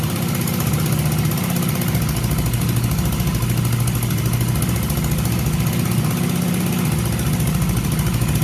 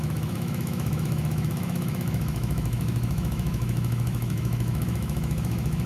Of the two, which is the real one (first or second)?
first